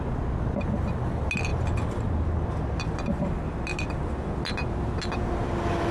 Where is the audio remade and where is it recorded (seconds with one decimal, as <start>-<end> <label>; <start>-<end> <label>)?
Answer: 0.0-5.9 recorded